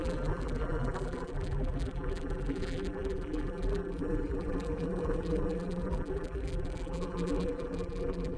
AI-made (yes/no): yes